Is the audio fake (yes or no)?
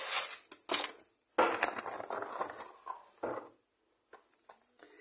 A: no